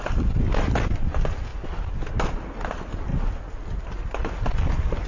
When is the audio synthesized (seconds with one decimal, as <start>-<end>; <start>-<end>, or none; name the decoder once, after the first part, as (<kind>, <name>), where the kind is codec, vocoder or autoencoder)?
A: none